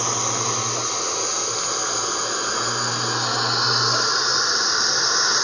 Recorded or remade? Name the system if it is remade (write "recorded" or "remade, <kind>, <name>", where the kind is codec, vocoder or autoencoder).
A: recorded